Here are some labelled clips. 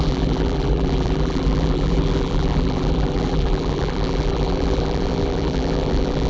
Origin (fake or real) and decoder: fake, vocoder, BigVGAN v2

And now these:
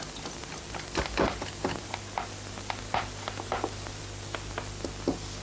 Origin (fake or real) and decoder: real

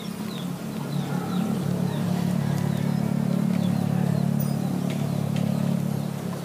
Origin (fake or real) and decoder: real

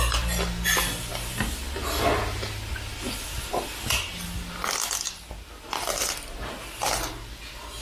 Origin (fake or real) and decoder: real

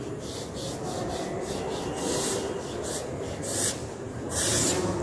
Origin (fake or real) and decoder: real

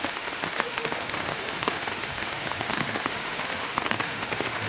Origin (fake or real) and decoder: fake, autoencoder, DAC-VAE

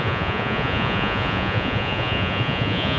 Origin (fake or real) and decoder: fake, vocoder, Vocos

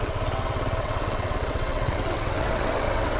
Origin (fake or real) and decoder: fake, vocoder, WaveNeXt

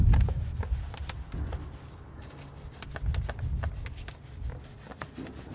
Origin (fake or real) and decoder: real